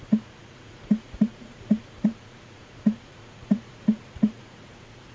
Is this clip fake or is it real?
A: fake